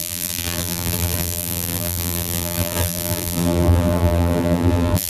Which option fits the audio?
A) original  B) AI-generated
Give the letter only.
B